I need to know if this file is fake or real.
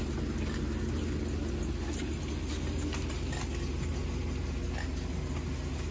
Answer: real